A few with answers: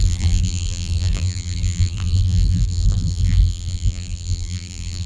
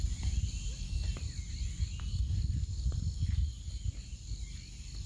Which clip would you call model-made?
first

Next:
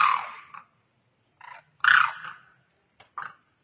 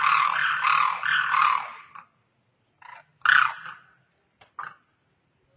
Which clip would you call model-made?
first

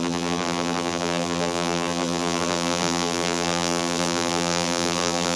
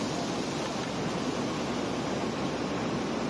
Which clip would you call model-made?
first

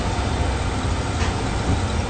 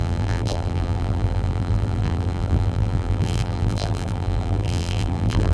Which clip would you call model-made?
second